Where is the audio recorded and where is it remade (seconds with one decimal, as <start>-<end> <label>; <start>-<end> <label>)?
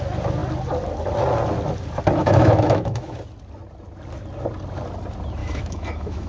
0.0-2.2 recorded; 2.2-3.2 remade; 3.2-5.4 recorded; 5.4-6.3 remade